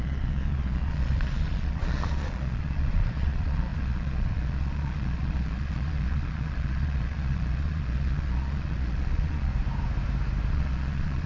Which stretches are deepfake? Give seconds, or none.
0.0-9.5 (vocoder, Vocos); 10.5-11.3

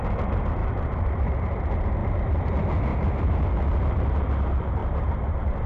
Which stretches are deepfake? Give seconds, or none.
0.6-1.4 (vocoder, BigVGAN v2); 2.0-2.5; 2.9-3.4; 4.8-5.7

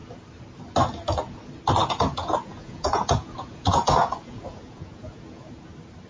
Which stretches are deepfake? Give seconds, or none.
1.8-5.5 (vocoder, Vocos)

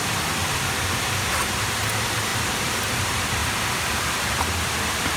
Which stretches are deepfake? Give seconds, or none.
0.4-1.3 (vocoder, BigVGAN v2); 2.3-3.0; 3.4-4.4

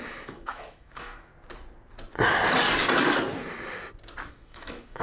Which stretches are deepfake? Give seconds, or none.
0.0-1.3 (autoencoder, DAC-VAE); 4.3-5.0

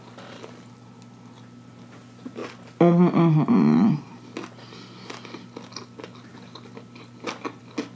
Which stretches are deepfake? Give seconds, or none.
none

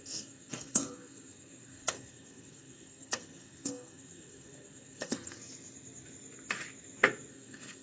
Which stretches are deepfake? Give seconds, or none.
0.0-5.4 (codec, SNAC); 7.3-7.8